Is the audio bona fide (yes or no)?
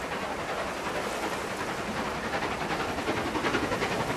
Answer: yes